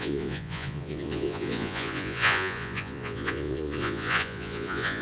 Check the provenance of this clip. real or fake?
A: fake